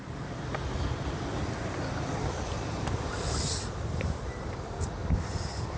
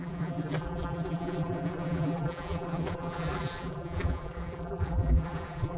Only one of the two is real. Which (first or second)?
first